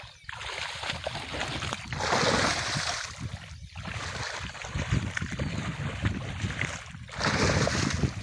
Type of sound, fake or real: real